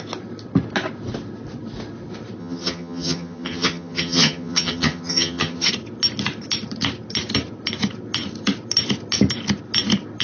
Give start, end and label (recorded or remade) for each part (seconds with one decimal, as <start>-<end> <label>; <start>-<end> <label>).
0.0-2.4 recorded; 2.4-5.7 remade; 5.7-10.2 recorded